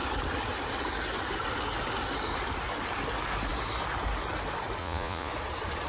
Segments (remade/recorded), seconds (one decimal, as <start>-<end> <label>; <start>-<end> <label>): 0.0-4.8 recorded; 4.8-5.3 remade; 5.3-5.9 recorded